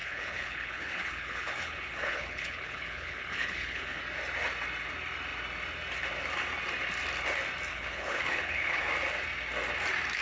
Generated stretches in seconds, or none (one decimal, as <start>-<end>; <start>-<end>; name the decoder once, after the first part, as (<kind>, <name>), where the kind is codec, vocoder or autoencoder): 0.0-4.0 (codec, HILCodec); 7.7-8.9